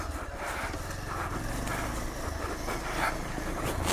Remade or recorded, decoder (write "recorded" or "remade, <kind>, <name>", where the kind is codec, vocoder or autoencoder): recorded